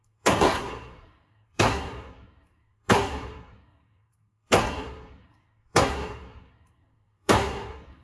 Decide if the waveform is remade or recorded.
remade